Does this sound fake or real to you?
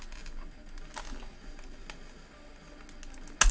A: real